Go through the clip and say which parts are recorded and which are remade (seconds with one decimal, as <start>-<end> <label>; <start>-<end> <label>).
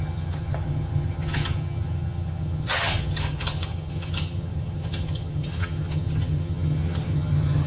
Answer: 0.0-7.7 remade